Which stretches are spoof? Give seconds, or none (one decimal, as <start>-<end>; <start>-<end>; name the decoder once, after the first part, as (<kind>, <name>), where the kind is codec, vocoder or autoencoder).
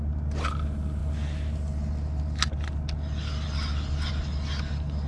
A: none